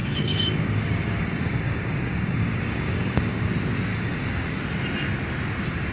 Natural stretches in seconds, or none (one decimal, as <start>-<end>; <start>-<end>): 3.5-3.9; 4.6-5.9